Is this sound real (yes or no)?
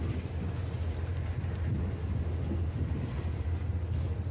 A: yes